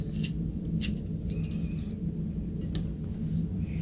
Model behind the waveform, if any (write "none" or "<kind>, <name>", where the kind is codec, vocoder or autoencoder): none